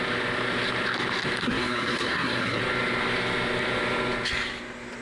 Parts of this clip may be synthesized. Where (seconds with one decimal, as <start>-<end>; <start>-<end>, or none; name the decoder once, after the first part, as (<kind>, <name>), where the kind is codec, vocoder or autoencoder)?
1.4-2.6 (codec, SNAC)